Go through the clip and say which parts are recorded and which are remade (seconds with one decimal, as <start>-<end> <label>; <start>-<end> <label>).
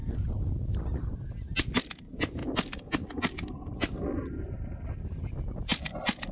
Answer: 0.0-6.3 recorded